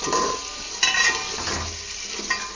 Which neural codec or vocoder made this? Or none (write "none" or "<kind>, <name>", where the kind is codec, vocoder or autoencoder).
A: none